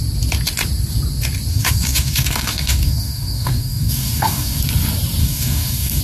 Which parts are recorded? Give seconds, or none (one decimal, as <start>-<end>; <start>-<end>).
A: 0.0-1.5; 4.6-5.2